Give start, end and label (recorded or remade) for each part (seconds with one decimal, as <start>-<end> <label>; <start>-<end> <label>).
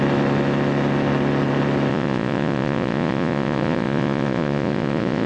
0.0-1.9 recorded; 1.9-5.3 remade